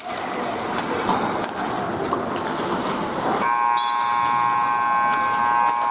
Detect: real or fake real